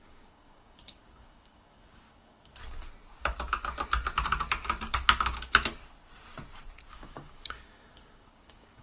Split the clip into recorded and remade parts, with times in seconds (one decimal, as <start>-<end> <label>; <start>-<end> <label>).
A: 0.0-2.5 remade; 2.5-6.9 recorded; 6.9-8.8 remade